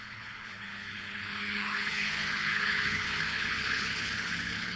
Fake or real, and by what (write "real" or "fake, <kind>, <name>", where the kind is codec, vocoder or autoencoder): fake, codec, HILCodec